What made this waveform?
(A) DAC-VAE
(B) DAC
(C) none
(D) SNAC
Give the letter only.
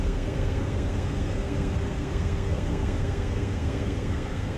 D